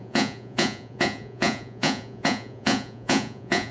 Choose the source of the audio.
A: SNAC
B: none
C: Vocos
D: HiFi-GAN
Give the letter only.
C